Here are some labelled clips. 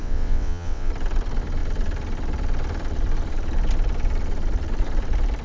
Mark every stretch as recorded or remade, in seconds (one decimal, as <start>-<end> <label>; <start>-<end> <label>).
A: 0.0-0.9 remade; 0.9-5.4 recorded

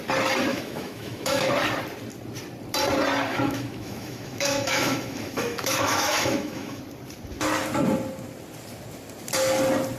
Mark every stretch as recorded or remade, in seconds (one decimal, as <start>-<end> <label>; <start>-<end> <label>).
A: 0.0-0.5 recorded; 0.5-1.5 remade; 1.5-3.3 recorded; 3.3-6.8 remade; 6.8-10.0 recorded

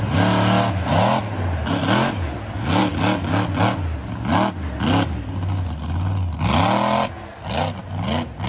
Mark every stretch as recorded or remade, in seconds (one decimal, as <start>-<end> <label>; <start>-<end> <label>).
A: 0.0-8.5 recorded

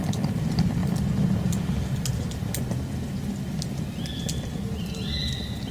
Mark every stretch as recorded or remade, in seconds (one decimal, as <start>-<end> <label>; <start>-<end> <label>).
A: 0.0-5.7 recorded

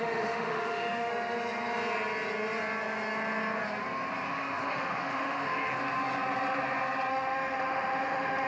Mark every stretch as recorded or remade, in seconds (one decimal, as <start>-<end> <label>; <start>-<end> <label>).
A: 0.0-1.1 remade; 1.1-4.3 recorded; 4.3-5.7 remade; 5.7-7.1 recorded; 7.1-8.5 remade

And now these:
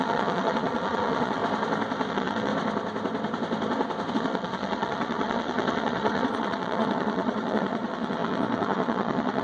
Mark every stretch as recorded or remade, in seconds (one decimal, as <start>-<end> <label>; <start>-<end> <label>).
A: 0.0-1.4 remade; 1.4-2.1 recorded; 2.1-2.5 remade; 2.5-4.1 recorded; 4.1-9.4 remade

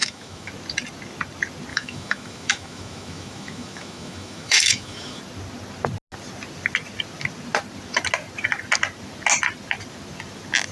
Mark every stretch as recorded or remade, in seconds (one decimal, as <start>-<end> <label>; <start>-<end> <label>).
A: 0.0-0.5 remade; 0.5-1.7 recorded; 1.7-5.2 remade; 5.2-10.7 recorded

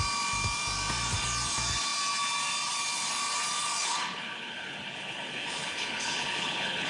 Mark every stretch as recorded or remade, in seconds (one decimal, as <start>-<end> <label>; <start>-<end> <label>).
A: 0.0-3.8 recorded; 3.8-6.9 remade